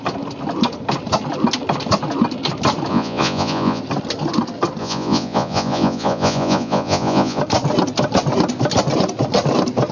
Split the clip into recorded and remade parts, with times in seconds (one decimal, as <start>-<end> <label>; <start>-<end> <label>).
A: 0.0-2.9 recorded; 2.9-3.8 remade; 3.8-4.8 recorded; 4.8-7.4 remade; 7.4-9.9 recorded